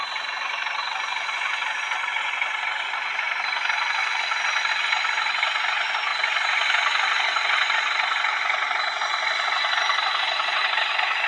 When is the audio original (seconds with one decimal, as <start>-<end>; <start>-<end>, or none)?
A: 0.0-11.3